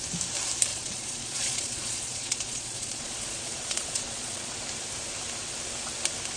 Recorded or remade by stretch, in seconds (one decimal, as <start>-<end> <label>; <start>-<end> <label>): 0.0-0.7 recorded; 0.7-4.5 remade; 4.5-6.4 recorded